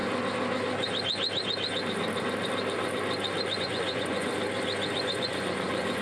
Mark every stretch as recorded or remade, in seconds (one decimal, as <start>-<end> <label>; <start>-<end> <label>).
0.0-3.6 recorded; 3.6-4.3 remade; 4.3-5.0 recorded; 5.0-6.0 remade